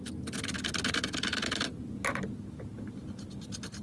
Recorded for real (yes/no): yes